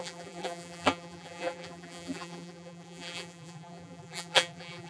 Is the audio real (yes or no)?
no